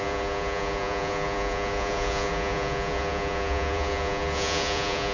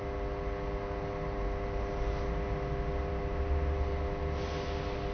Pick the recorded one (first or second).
second